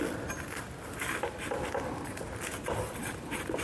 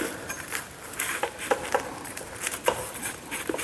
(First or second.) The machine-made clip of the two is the second